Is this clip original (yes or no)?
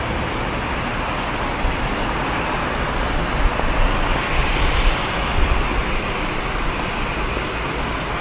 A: yes